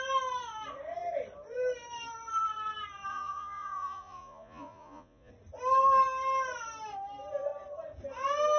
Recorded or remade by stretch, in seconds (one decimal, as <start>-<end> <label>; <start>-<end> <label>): 0.0-3.1 recorded; 3.1-5.3 remade; 5.3-8.6 recorded